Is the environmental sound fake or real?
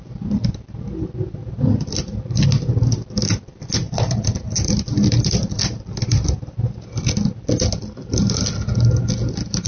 real